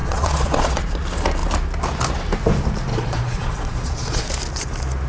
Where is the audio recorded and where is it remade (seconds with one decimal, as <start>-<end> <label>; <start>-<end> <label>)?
0.0-0.8 remade; 0.8-2.9 recorded; 2.9-4.3 remade; 4.3-5.1 recorded